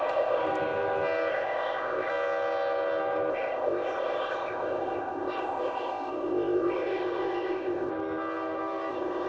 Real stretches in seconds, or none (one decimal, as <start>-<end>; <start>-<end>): 0.4-1.3; 2.1-3.3; 7.9-8.9